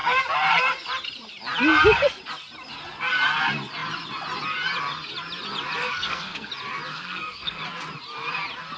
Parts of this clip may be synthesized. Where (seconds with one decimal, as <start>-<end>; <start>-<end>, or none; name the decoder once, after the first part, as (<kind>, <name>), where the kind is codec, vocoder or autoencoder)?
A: 5.8-6.5 (codec, SNAC); 6.9-7.6